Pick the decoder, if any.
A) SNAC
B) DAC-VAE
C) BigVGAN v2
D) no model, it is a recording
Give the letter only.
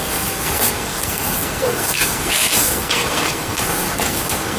A